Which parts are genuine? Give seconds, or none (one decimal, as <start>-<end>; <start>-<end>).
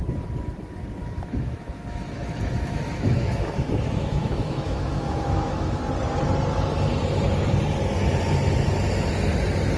0.0-1.0; 5.8-9.8